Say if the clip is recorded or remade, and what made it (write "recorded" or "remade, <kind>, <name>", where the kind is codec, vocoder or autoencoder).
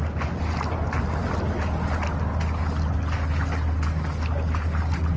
recorded